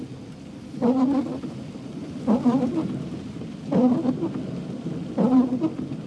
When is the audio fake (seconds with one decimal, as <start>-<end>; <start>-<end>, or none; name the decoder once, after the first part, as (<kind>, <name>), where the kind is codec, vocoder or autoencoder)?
2.0-5.6 (vocoder, BigVGAN v2)